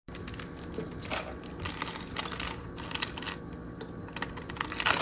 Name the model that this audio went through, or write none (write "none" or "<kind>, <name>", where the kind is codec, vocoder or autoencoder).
none